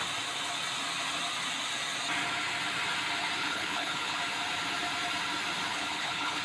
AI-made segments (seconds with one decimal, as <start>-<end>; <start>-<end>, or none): 3.4-4.2; 5.7-6.4